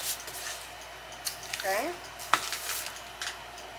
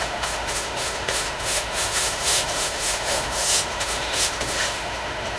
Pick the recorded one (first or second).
first